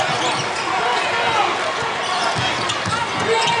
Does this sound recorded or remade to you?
recorded